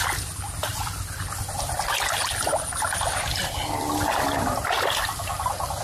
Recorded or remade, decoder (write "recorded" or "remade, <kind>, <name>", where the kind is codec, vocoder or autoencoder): recorded